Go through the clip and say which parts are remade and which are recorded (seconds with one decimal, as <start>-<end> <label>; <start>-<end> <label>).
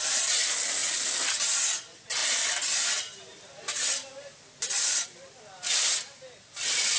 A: 0.0-7.0 recorded